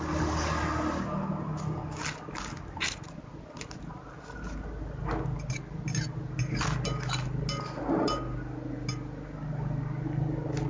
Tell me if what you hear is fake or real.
real